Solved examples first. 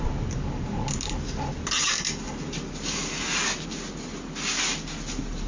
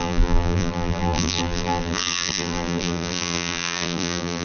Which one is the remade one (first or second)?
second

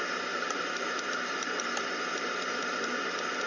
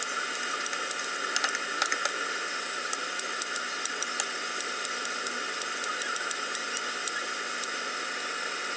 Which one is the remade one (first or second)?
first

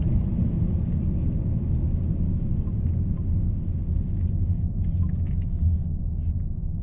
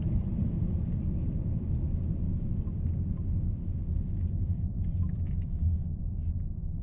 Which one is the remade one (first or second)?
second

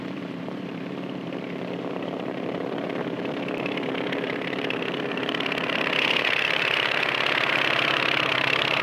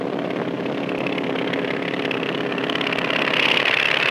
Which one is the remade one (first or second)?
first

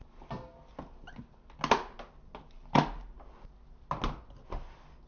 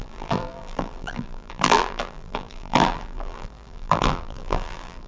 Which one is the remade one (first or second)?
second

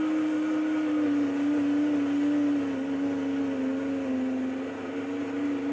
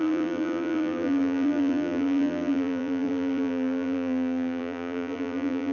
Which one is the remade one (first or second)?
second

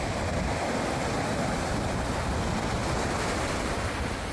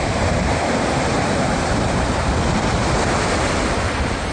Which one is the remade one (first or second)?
second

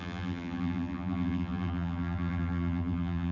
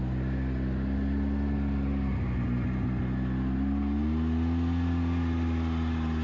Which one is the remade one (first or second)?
first